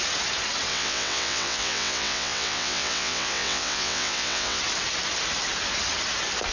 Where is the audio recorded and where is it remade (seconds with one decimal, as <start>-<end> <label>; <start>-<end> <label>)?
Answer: 0.0-0.7 recorded; 0.7-4.6 remade; 4.6-6.5 recorded